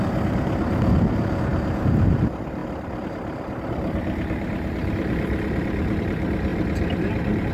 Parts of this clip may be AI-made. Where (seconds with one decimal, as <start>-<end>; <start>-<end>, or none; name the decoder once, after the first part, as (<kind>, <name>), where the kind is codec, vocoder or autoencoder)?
0.0-1.5 (vocoder, BigVGAN v2); 2.1-7.5